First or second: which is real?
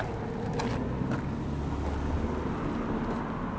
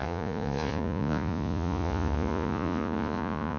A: first